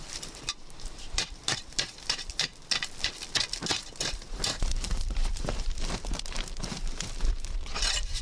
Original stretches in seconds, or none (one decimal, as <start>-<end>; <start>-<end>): 2.5-3.5